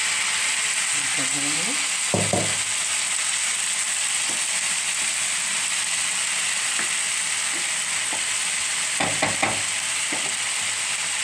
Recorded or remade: recorded